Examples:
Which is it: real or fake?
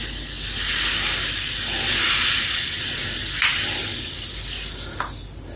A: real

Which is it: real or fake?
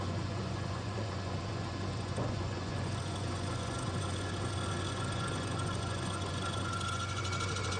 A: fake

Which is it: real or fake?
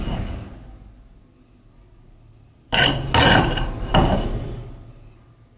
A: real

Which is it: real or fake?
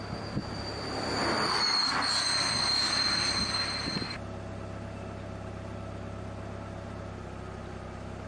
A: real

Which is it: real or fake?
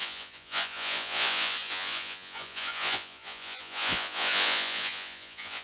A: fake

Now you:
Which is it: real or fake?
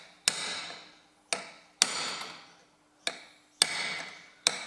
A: real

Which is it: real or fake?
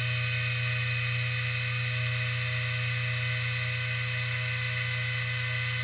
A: real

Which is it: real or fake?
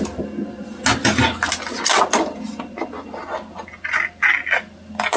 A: real